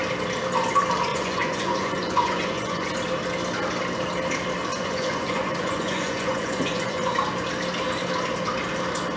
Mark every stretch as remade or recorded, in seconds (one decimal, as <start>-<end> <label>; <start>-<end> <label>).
0.0-1.1 recorded; 1.1-2.9 remade; 2.9-4.7 recorded; 4.7-7.1 remade; 7.1-9.2 recorded

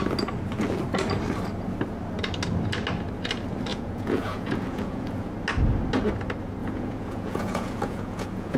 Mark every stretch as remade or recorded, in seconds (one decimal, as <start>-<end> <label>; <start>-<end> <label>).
0.0-3.7 recorded; 3.7-5.3 remade; 5.3-6.6 recorded; 6.6-8.6 remade

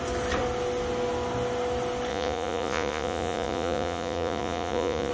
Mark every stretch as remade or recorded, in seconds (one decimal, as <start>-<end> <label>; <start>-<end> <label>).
0.0-2.1 recorded; 2.1-5.1 remade

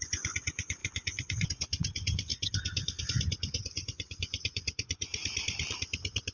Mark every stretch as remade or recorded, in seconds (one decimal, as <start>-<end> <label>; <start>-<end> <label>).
0.0-5.1 remade; 5.1-6.3 recorded

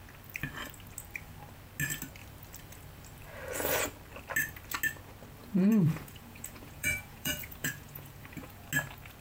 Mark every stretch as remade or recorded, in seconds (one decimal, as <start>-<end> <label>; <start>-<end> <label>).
0.0-5.4 recorded; 5.4-8.7 remade; 8.7-9.2 recorded

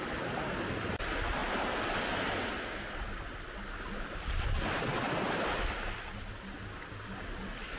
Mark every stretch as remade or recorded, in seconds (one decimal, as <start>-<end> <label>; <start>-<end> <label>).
0.0-7.8 recorded